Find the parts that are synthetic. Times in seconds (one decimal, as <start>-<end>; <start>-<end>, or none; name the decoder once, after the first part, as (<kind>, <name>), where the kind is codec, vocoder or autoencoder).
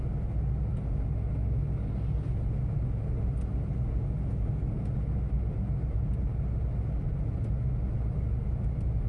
none